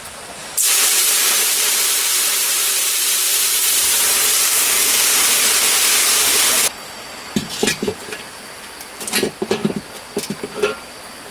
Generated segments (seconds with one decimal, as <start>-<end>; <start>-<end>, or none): 0.4-5.3; 7.6-8.9